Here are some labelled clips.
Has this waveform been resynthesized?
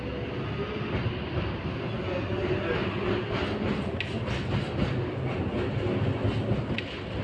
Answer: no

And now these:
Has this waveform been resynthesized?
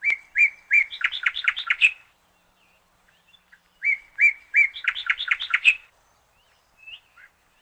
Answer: yes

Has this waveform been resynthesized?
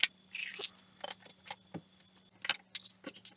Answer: no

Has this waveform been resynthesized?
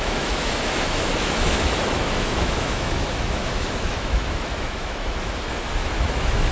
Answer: yes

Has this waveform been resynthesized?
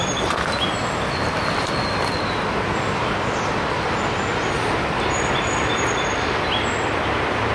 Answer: no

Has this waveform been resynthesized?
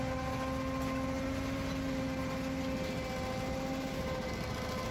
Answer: no